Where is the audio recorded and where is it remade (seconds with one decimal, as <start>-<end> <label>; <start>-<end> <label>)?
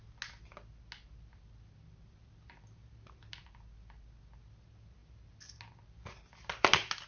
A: 0.0-7.1 recorded